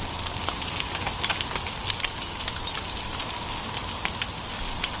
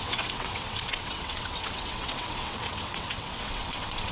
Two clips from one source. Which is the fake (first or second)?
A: second